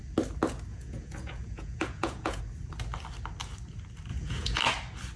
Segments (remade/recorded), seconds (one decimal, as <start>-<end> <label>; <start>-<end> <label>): 0.0-0.7 recorded; 0.7-2.4 remade; 2.4-4.1 recorded; 4.1-4.6 remade; 4.6-5.2 recorded